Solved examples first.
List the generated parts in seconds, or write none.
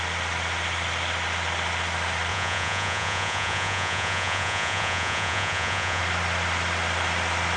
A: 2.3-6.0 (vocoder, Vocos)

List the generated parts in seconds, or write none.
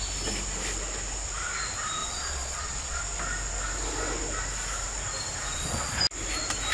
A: 2.0-3.0 (vocoder, Vocos); 5.5-6.0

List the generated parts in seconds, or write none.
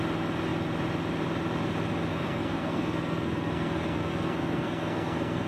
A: 2.1-5.5 (codec, SNAC)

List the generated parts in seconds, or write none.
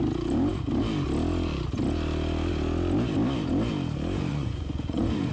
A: 4.3-5.3 (vocoder, Vocos)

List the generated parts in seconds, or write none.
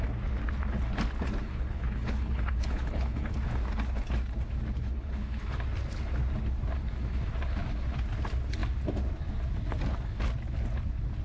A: 1.4-3.3 (codec, HILCodec); 4.8-5.4